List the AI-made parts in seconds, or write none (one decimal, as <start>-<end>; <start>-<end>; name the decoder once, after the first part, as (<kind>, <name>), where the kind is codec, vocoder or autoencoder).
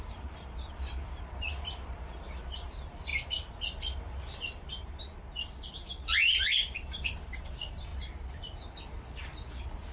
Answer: 0.0-3.1 (vocoder, BigVGAN v2); 3.6-7.9; 8.9-9.9